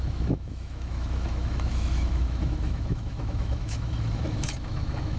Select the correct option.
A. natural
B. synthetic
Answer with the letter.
B